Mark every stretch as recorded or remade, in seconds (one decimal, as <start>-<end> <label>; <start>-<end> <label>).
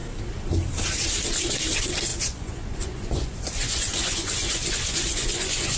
0.0-2.1 recorded; 2.1-5.8 remade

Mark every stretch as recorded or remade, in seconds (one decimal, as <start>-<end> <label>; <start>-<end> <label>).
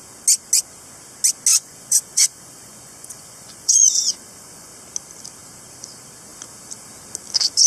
0.0-1.5 recorded; 1.5-4.7 remade; 4.7-7.7 recorded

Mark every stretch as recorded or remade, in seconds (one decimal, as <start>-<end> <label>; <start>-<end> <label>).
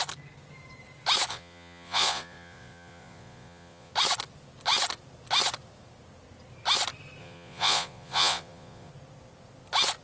0.0-1.3 recorded; 1.3-3.9 remade; 3.9-7.2 recorded; 7.2-8.9 remade; 8.9-10.0 recorded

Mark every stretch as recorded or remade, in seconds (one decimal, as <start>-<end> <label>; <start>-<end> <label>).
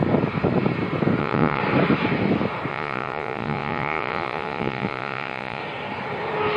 0.0-1.2 recorded; 1.2-1.6 remade; 1.6-2.7 recorded; 2.7-5.6 remade; 5.6-6.6 recorded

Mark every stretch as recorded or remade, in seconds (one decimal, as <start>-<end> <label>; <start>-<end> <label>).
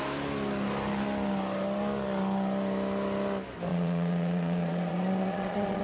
0.0-3.7 recorded; 3.7-5.8 remade